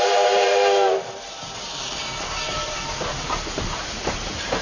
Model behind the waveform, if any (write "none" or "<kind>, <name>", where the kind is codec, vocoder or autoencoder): vocoder, BigVGAN v2